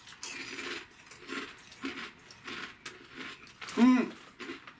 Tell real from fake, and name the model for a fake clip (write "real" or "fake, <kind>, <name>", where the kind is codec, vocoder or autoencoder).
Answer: real